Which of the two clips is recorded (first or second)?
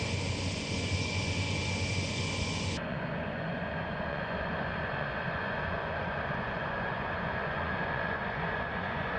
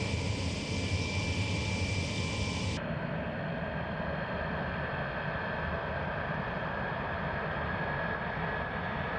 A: second